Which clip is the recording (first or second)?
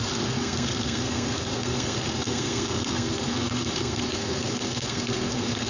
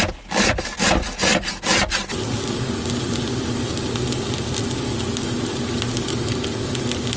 second